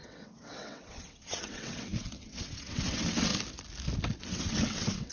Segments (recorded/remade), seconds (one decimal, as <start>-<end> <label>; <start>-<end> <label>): 0.0-3.3 remade; 3.3-4.2 recorded; 4.2-5.1 remade